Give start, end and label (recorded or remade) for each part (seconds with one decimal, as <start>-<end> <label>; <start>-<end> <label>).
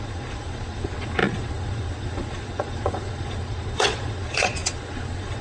0.0-5.4 remade